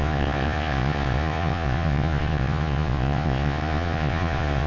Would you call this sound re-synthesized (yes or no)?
yes